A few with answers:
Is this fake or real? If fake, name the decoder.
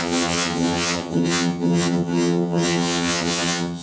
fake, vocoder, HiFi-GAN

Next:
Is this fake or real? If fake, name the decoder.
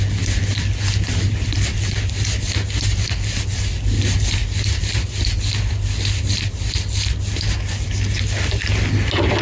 real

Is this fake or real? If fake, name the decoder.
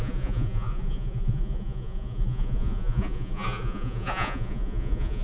fake, vocoder, Vocos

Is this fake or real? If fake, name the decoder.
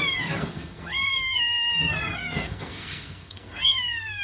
fake, codec, SNAC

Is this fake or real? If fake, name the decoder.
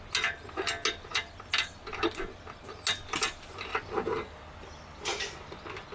real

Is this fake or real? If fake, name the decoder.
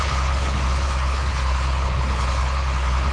fake, codec, HILCodec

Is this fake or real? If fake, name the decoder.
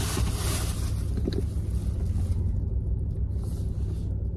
real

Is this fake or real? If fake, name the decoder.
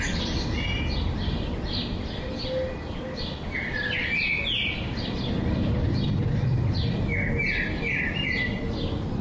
real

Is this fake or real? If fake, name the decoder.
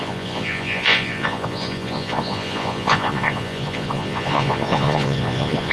fake, vocoder, Vocos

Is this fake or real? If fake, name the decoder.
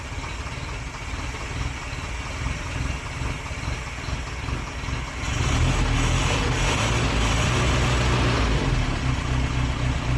real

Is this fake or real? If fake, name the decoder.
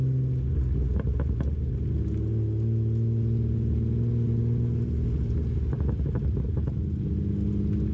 real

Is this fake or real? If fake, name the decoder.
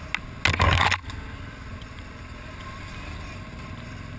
real